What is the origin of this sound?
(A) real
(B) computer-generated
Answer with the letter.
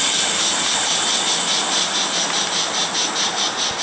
A